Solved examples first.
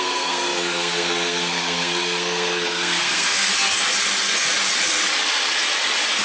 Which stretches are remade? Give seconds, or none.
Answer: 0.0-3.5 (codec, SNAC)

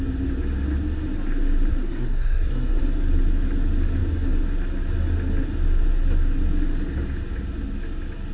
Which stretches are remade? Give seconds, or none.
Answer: 1.7-2.8 (codec, SNAC)

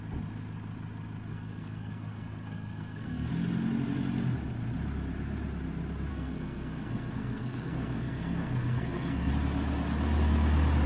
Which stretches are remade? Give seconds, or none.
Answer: 1.3-3.3 (codec, SNAC); 6.1-9.3

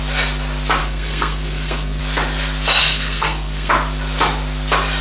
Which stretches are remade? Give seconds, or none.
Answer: 0.8-2.0 (codec, SNAC); 2.8-3.7

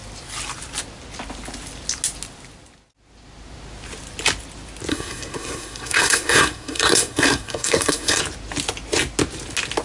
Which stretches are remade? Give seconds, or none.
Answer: 4.9-8.2 (codec, SNAC)

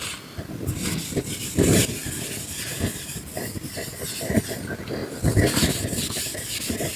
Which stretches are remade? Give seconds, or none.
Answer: none

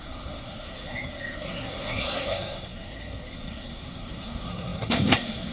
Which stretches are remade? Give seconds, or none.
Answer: 0.0-5.5 (codec, SNAC)

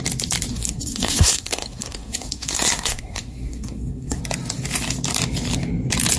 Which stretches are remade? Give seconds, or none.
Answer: 0.5-4.2 (codec, SNAC)